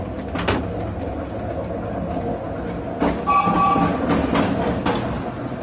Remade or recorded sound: recorded